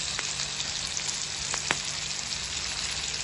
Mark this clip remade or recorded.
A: recorded